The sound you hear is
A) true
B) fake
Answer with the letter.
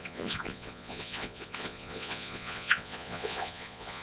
B